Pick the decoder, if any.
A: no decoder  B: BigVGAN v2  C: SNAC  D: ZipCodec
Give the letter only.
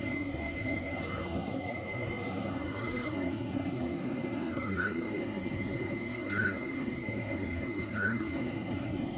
C